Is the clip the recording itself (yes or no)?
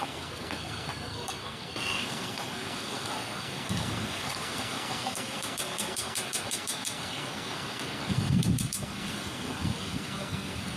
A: no